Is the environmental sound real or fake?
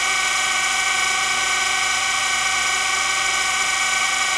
fake